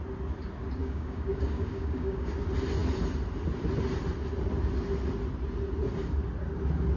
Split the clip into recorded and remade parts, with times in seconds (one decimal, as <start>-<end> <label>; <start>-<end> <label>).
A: 0.0-0.8 recorded; 0.8-2.3 remade; 2.3-7.0 recorded